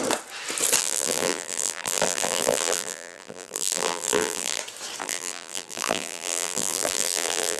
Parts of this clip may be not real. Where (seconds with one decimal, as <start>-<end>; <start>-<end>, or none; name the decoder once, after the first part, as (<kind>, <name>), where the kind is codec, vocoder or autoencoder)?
0.8-4.6 (vocoder, BigVGAN v2); 5.0-7.6